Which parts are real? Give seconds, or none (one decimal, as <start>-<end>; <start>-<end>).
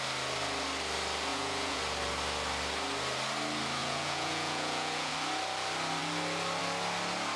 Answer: 0.0-1.3; 1.8-3.8; 5.1-7.4